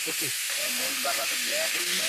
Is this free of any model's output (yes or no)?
no